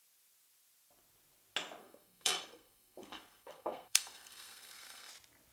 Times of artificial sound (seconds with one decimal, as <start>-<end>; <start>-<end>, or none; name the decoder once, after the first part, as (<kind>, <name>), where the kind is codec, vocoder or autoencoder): 1.8-5.1 (codec, SNAC)